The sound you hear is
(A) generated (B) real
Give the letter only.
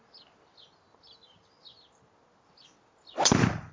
B